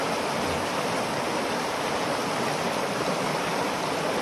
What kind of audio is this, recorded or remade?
recorded